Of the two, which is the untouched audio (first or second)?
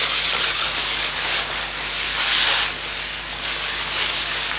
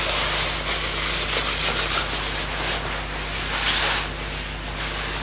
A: second